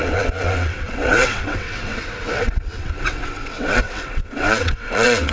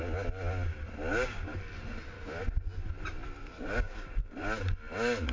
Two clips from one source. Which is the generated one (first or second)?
first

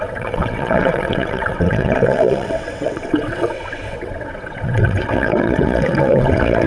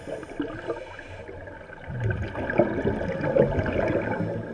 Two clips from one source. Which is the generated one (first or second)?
first